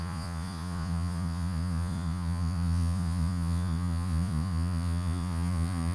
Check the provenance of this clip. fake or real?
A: fake